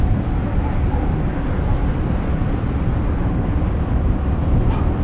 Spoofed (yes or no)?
no